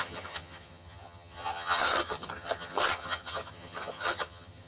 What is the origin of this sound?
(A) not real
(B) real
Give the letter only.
A